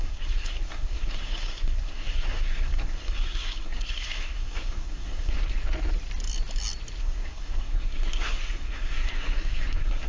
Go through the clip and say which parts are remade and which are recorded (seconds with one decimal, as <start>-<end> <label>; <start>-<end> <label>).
0.0-5.6 remade; 5.6-7.0 recorded; 7.0-10.1 remade

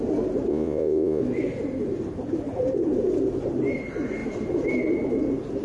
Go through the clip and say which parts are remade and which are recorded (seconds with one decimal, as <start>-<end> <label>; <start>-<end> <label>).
0.0-0.5 recorded; 0.5-1.2 remade; 1.2-5.6 recorded

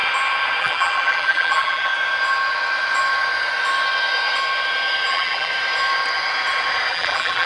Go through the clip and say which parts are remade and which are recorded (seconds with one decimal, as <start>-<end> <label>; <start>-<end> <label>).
0.0-0.6 recorded; 0.6-1.9 remade; 1.9-5.1 recorded; 5.1-5.5 remade; 5.5-6.9 recorded; 6.9-7.5 remade

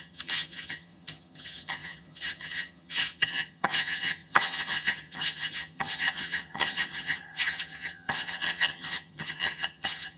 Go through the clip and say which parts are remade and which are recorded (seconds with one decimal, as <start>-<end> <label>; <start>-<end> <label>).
0.0-10.2 remade

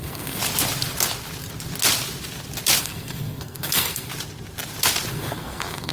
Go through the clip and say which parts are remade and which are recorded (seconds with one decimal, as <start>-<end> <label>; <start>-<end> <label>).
0.0-0.4 remade; 0.4-2.8 recorded; 2.8-4.1 remade; 4.1-5.1 recorded; 5.1-5.9 remade

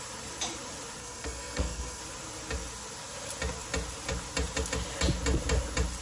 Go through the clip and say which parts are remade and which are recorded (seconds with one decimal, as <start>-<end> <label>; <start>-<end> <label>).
0.0-1.0 recorded; 1.0-2.0 remade; 2.0-6.0 recorded

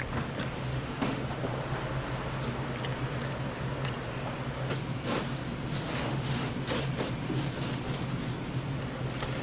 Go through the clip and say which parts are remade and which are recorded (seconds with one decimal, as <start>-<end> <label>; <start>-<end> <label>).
0.0-0.6 recorded; 0.6-1.2 remade; 1.2-6.0 recorded; 6.0-6.5 remade; 6.5-9.4 recorded

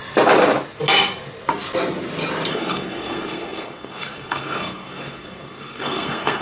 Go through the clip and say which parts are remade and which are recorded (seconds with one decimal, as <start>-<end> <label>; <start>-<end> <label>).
0.0-2.5 recorded; 2.5-6.4 remade